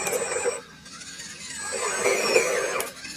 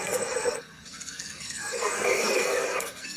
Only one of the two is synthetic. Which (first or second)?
second